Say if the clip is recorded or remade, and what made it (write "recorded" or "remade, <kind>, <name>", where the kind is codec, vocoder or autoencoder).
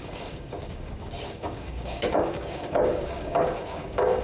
remade, codec, DAC